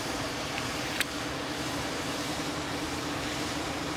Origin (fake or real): fake